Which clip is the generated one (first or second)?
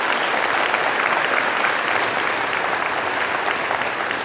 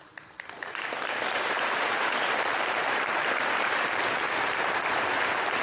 second